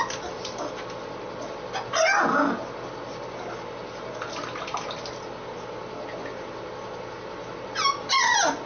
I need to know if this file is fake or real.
real